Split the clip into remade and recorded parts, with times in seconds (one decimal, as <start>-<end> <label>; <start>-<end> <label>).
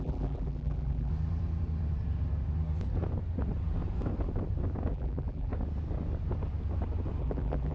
0.0-1.1 remade; 1.1-4.9 recorded; 4.9-5.5 remade; 5.5-7.2 recorded; 7.2-7.7 remade